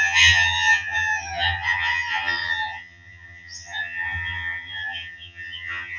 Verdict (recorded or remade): remade